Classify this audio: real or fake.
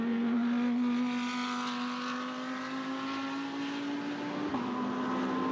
real